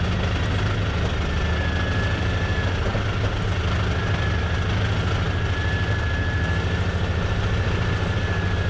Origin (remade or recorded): recorded